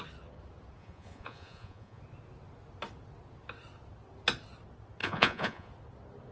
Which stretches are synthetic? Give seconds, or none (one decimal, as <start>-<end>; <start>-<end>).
0.8-2.0; 5.0-5.7